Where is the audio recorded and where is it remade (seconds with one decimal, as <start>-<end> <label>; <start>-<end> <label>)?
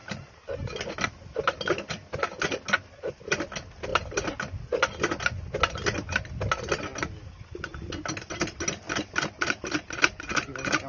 0.0-10.9 recorded